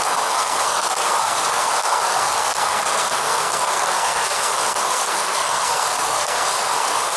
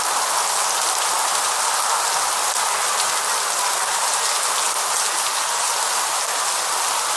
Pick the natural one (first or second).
second